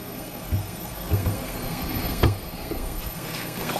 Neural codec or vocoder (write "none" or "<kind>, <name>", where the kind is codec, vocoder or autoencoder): codec, SNAC